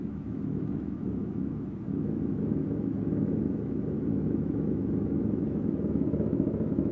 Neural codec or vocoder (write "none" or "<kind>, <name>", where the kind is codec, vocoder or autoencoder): autoencoder, DAC-VAE